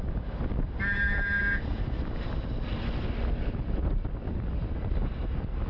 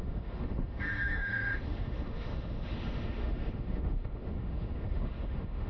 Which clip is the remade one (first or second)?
second